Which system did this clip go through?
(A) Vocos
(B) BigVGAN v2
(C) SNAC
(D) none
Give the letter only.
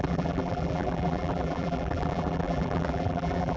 B